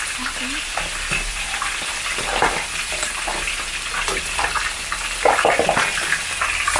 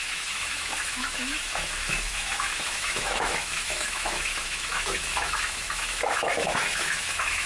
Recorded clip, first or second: first